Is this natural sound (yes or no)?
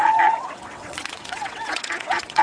no